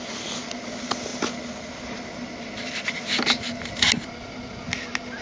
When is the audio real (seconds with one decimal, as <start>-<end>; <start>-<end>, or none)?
0.0-5.2